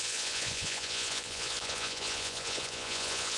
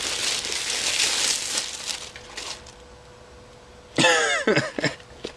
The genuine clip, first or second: second